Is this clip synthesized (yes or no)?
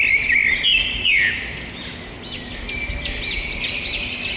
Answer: no